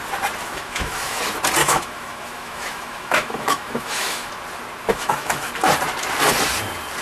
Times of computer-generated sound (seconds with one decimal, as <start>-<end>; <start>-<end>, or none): 0.4-1.2; 1.6-4.3; 4.9-5.5